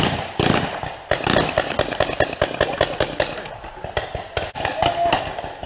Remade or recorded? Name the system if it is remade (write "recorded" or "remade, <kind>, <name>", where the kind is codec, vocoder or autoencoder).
recorded